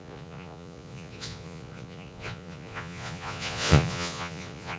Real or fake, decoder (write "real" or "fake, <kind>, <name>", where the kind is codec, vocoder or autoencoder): fake, vocoder, Vocos